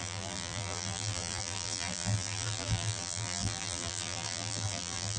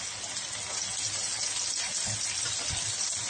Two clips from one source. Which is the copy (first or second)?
first